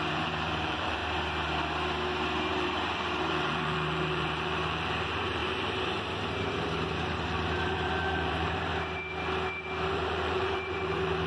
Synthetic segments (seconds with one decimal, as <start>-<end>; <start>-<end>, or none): 0.0-1.0; 2.5-5.4; 6.9-8.7; 9.9-11.3